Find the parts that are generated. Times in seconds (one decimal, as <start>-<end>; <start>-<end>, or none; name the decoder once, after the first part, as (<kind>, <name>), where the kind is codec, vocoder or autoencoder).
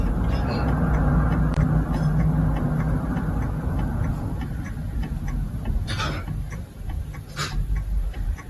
0.0-1.1 (vocoder, BigVGAN v2); 2.6-8.5